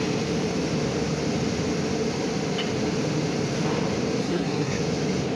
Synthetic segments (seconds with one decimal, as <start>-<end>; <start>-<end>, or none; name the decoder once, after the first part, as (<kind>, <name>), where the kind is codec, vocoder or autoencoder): 4.2-4.8 (codec, SNAC)